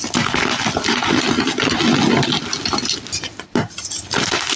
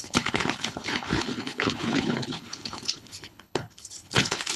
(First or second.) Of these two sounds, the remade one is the second